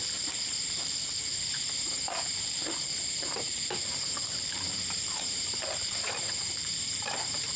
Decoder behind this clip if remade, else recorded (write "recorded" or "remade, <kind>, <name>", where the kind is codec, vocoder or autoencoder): remade, vocoder, BigVGAN v2